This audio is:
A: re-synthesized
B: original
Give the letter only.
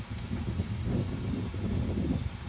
B